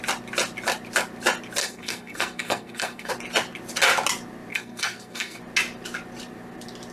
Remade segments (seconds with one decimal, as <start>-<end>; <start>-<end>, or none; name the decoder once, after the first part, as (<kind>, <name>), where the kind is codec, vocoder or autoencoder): 1.6-3.1 (codec, SNAC); 4.5-5.4